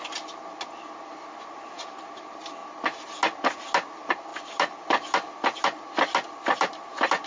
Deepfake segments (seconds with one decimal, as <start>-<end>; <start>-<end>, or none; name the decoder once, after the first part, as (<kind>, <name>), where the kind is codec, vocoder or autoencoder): none